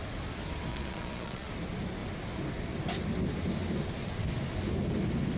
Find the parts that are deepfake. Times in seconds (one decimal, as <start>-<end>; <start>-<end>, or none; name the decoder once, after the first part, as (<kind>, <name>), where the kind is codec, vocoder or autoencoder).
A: 0.7-1.5 (vocoder, Vocos)